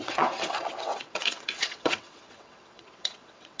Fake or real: fake